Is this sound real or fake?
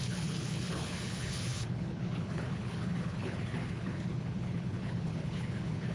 fake